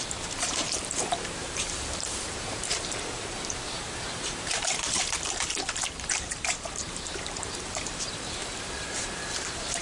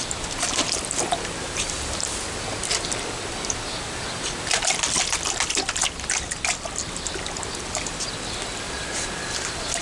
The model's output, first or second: first